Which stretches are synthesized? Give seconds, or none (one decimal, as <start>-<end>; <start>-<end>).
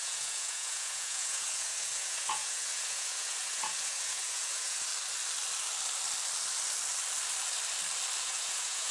0.0-4.9; 8.2-8.9